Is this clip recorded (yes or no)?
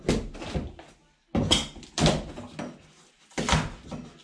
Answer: yes